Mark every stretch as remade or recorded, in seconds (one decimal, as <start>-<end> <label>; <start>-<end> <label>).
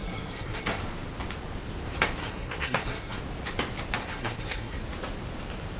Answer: 0.0-0.8 remade; 0.8-2.2 recorded; 2.2-3.2 remade; 3.2-4.0 recorded; 4.0-4.8 remade; 4.8-5.8 recorded